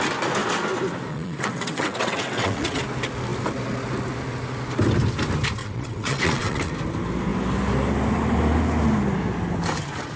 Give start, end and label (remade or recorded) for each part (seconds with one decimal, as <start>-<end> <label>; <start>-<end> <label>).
0.0-1.1 recorded; 1.1-2.8 remade; 2.8-5.6 recorded; 5.6-6.7 remade; 6.7-10.2 recorded